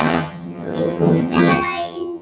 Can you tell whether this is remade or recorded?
remade